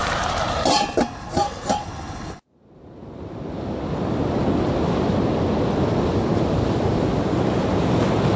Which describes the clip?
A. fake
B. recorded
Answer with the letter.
B